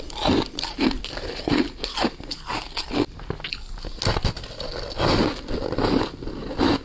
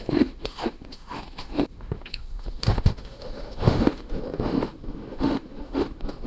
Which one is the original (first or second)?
first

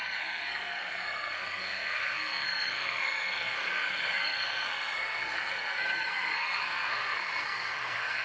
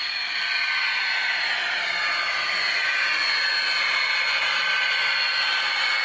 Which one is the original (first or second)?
second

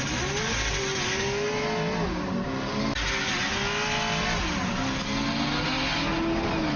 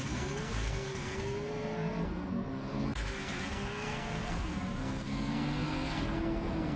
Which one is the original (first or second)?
first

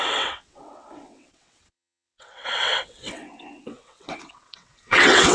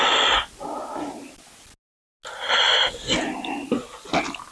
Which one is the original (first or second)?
second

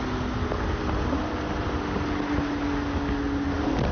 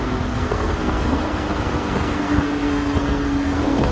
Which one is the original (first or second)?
first